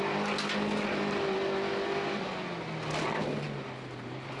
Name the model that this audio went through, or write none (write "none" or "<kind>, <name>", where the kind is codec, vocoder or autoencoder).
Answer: none